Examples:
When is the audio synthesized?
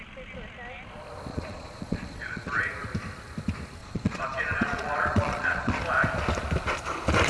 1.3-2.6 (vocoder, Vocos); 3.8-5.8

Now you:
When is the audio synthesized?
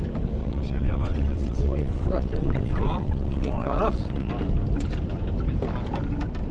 0.4-4.3 (vocoder, WaveNeXt)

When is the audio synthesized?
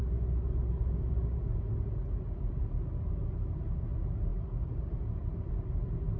4.3-5.5 (vocoder, BigVGAN v2)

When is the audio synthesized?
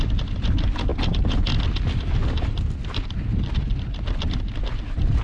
none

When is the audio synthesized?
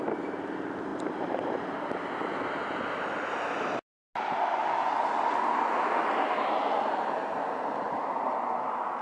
0.9-2.1 (vocoder, BigVGAN v2)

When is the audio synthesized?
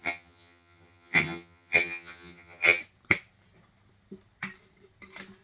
0.0-2.8 (vocoder, HiFi-GAN)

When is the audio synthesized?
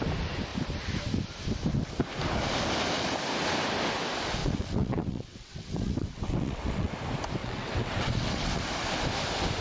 4.4-6.9 (vocoder, WaveNeXt); 7.4-8.6